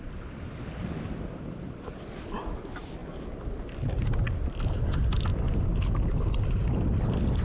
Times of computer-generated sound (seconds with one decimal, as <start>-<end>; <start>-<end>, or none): 5.3-5.8